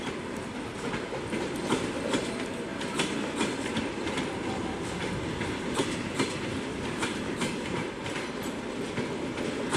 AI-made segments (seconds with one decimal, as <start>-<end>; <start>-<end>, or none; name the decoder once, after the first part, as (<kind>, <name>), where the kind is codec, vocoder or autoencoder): 0.0-0.7 (vocoder, BigVGAN v2); 1.2-9.8